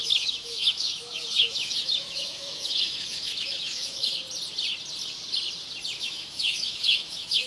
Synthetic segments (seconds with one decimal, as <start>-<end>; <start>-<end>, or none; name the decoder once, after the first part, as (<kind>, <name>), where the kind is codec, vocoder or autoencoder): 0.0-4.2 (autoencoder, DAC-VAE); 6.0-7.5